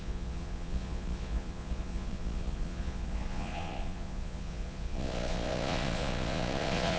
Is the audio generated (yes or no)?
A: yes